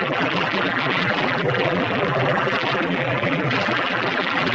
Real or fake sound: fake